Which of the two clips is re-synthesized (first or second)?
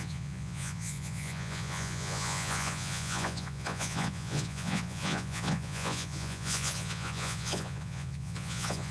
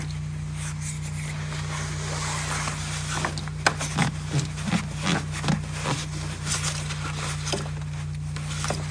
first